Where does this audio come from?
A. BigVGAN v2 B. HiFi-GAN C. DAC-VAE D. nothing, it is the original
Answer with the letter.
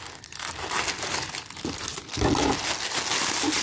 D